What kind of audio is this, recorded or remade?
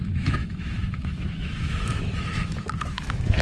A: remade